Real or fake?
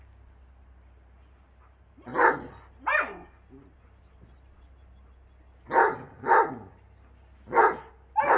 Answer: real